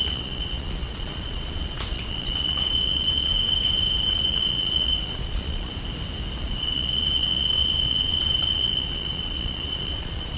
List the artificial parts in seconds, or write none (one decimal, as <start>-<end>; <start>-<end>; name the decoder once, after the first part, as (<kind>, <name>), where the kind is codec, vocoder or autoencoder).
0.0-3.3 (vocoder, Vocos); 4.1-5.7; 6.4-10.4